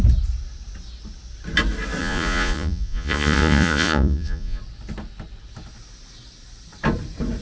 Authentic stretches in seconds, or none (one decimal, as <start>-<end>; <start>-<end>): 0.0-2.0; 4.6-7.4